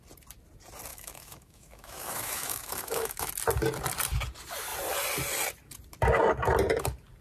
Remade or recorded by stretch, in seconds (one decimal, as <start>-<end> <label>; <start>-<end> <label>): 0.0-0.9 recorded; 0.9-3.3 remade; 3.3-7.2 recorded